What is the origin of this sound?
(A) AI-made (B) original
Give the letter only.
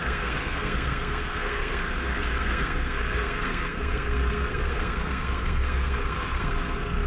A